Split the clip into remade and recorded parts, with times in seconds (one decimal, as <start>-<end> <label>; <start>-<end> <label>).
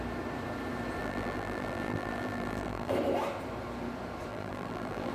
0.0-1.0 recorded; 1.0-2.9 remade; 2.9-4.3 recorded; 4.3-5.1 remade